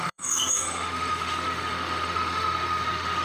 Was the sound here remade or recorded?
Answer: remade